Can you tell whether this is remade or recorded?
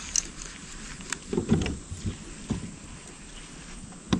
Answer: recorded